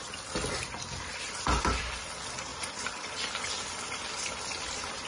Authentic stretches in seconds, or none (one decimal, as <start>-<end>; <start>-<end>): 0.0-5.1

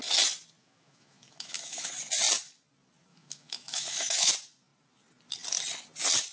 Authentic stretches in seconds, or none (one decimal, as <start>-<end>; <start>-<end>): 0.0-0.6; 1.9-3.1; 4.3-6.3

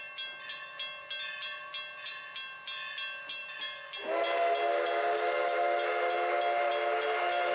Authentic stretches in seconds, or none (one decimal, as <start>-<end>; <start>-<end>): 0.0-7.5

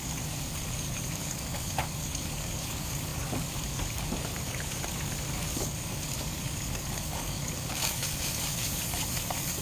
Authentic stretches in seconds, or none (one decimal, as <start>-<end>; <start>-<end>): none

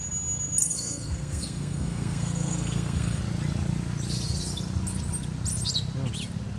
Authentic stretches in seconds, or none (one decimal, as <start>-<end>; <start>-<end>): 0.0-0.6; 3.2-6.6

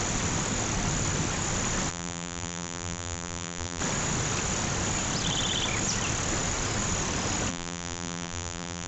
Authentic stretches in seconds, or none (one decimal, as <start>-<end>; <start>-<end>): 0.0-1.9; 3.8-7.5